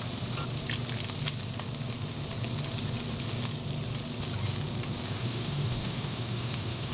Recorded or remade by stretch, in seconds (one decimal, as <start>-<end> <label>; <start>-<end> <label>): 0.0-5.2 recorded; 5.2-6.9 remade